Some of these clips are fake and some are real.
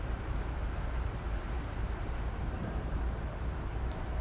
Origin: fake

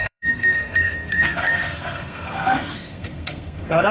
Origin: fake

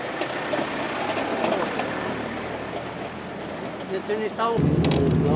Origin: real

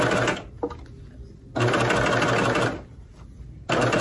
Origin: real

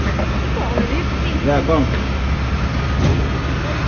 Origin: real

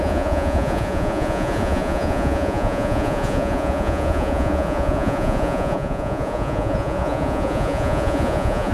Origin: fake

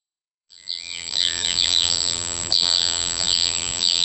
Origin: fake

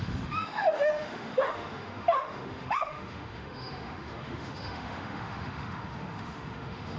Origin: fake